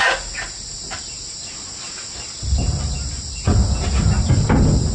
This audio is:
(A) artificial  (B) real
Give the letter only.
B